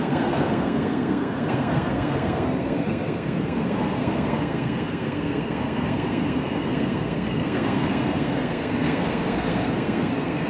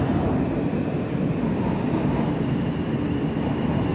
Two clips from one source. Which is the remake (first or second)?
first